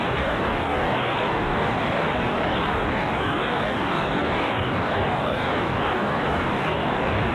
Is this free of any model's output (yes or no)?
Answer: no